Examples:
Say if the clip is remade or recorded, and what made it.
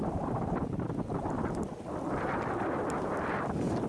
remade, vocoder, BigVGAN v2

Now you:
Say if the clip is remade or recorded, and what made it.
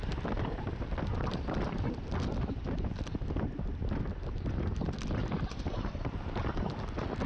remade, vocoder, BigVGAN v2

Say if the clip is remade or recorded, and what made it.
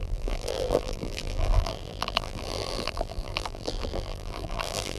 remade, vocoder, BigVGAN v2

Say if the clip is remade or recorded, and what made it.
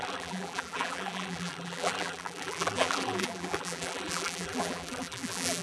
remade, vocoder, BigVGAN v2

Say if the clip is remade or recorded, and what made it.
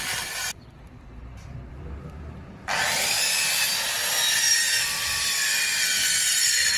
remade, vocoder, BigVGAN v2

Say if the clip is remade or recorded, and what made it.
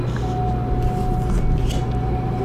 recorded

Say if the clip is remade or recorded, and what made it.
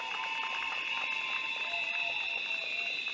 recorded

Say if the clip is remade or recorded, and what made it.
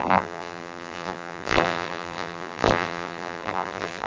remade, vocoder, BigVGAN v2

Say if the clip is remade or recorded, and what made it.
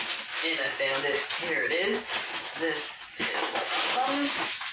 recorded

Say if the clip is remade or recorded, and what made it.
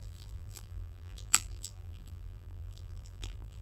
remade, vocoder, BigVGAN v2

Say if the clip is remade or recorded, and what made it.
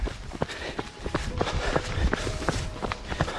remade, vocoder, BigVGAN v2